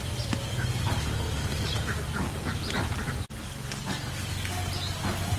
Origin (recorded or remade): recorded